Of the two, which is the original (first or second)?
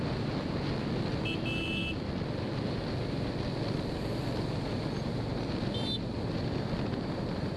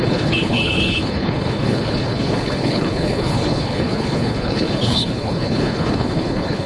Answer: first